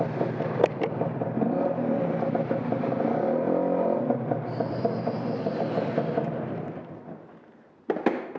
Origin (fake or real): fake